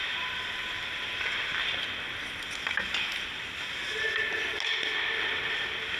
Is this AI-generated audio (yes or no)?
no